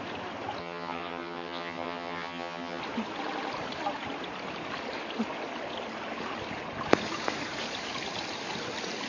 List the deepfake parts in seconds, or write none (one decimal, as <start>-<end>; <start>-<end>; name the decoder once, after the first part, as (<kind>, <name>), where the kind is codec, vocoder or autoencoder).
0.6-2.8 (vocoder, HiFi-GAN)